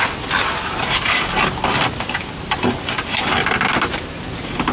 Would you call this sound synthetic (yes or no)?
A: no